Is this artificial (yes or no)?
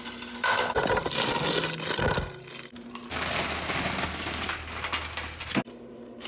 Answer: no